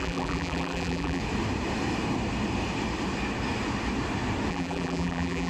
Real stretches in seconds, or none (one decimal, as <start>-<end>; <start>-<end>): 1.2-4.5